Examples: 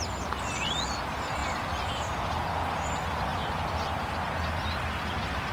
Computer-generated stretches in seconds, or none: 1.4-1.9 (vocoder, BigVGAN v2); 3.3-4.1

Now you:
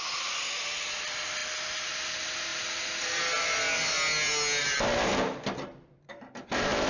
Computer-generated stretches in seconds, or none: 2.5-3.2 (vocoder, BigVGAN v2); 4.6-6.9

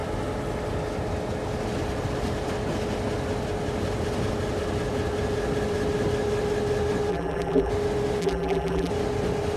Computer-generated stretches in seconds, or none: 7.1-7.7 (vocoder, BigVGAN v2); 8.2-8.9

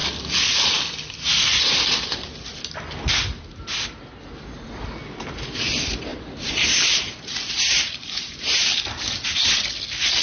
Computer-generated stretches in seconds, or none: 6.1-8.3 (vocoder, BigVGAN v2)

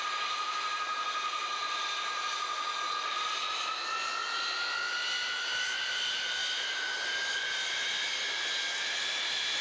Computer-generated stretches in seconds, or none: 0.0-0.9 (vocoder, BigVGAN v2); 5.6-6.4; 8.3-9.6